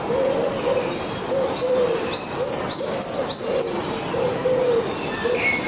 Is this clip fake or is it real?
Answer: real